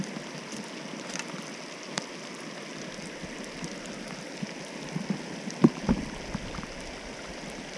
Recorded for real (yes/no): yes